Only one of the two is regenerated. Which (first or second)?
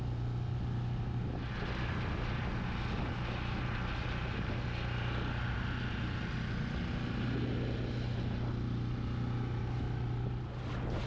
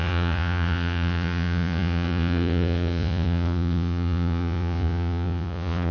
second